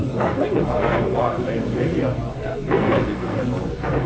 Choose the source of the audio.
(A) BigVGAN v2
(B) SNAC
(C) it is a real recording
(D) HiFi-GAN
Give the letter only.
B